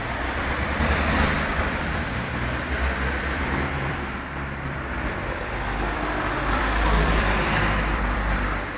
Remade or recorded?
remade